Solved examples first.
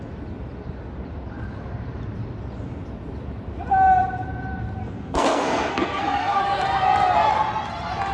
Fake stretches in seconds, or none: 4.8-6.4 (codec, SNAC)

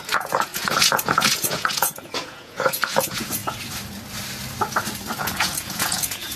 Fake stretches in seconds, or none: 0.0-3.4 (vocoder, Vocos); 5.2-6.4

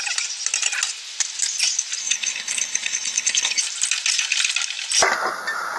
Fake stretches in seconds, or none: 2.0-3.6 (codec, HILCodec)